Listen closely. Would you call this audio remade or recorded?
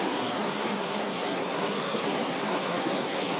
remade